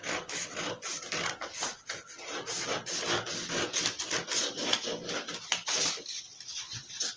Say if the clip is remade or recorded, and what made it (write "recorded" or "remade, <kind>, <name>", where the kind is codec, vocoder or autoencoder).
recorded